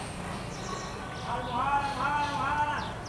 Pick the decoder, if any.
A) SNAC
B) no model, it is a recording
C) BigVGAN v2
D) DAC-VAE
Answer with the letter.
B